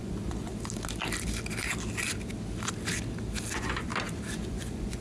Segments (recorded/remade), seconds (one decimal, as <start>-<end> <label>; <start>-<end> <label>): 0.0-0.5 remade; 0.5-3.5 recorded; 3.5-3.9 remade; 3.9-4.4 recorded; 4.4-5.0 remade